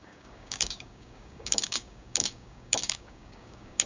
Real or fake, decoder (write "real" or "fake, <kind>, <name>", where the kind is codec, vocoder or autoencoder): fake, codec, DAC